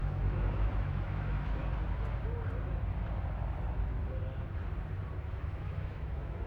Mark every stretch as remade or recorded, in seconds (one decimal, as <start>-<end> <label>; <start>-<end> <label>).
0.0-1.6 remade; 1.6-5.3 recorded; 5.3-6.5 remade